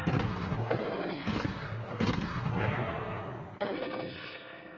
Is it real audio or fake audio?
fake